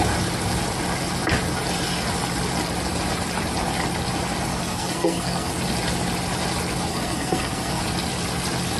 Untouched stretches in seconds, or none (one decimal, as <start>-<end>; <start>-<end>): 0.0-4.5; 5.5-6.9; 7.8-8.8